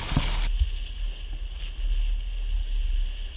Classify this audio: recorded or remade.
recorded